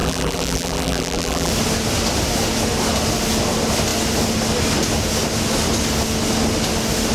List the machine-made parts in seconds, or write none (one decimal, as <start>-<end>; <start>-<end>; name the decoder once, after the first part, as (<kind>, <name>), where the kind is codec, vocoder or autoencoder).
0.0-1.5 (vocoder, BigVGAN v2)